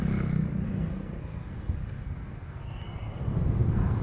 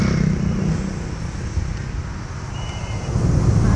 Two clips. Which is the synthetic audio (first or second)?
first